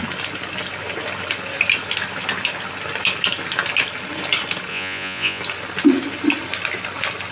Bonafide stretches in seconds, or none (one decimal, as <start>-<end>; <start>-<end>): 0.0-4.7; 5.4-7.3